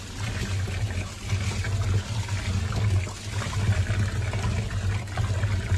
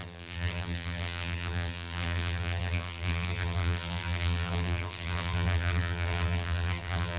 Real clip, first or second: first